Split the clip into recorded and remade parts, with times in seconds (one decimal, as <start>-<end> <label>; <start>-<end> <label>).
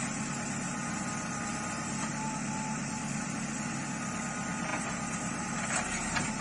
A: 0.0-6.4 recorded